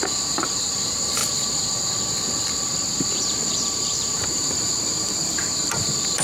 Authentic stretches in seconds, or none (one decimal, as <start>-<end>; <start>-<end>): 1.2-3.0